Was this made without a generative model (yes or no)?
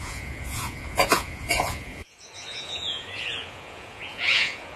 no